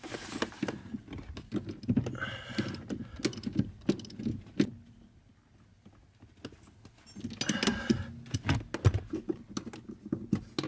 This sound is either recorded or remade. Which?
recorded